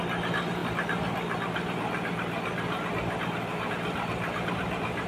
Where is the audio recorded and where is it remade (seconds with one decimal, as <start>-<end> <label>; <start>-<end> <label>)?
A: 0.0-5.1 recorded